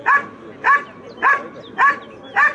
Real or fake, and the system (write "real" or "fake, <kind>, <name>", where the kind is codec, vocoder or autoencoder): real